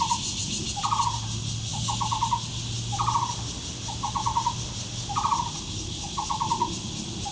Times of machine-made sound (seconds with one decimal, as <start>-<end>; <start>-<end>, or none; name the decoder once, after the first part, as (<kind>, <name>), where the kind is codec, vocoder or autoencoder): none